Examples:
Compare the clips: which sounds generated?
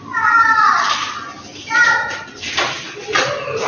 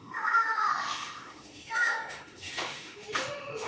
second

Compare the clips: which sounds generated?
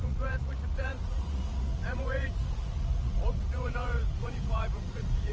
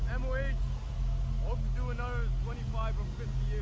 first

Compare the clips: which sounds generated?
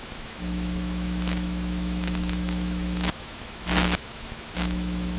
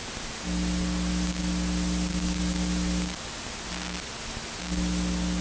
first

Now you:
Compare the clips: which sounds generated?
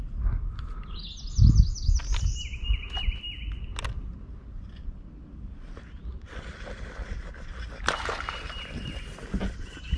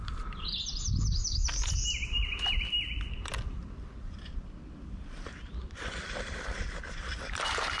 second